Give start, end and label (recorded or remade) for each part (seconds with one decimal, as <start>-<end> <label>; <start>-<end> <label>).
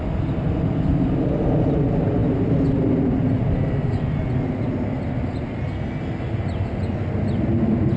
0.0-8.0 recorded